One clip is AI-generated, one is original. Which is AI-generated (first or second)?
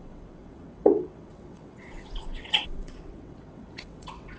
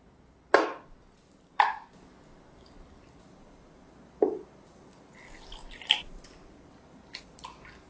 first